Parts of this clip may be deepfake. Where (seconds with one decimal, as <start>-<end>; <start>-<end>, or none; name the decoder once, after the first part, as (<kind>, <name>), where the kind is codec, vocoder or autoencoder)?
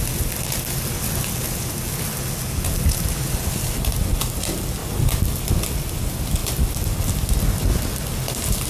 none